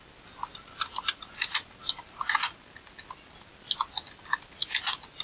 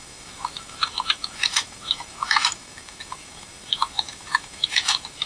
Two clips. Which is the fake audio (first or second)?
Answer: second